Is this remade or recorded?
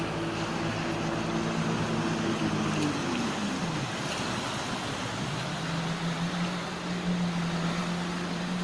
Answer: recorded